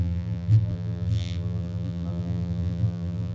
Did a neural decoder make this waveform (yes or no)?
yes